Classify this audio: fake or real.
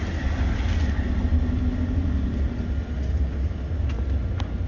real